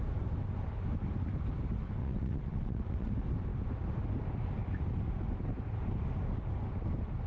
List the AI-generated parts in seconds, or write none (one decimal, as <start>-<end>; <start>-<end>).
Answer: 2.0-3.1

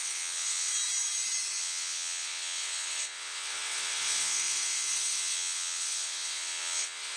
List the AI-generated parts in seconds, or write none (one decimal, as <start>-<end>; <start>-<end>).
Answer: 0.0-0.7; 1.6-7.2